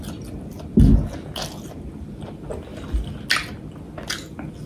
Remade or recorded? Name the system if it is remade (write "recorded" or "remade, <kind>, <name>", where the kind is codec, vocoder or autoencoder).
recorded